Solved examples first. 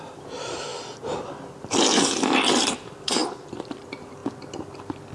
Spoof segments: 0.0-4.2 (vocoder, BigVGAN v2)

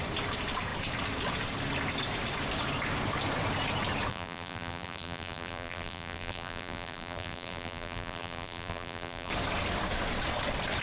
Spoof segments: 4.1-9.3 (vocoder, BigVGAN v2)